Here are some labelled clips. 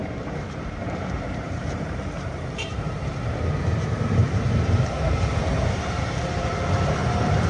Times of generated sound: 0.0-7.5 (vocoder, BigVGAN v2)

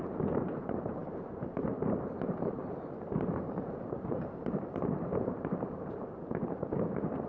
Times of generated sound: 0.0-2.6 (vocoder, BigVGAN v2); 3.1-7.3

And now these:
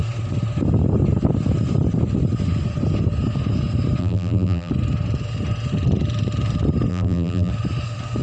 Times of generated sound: 4.0-4.7 (vocoder, BigVGAN v2); 6.9-7.5

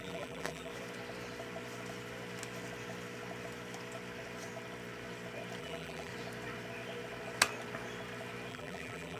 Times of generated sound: 0.0-0.7 (vocoder, BigVGAN v2); 5.6-6.1; 8.5-9.2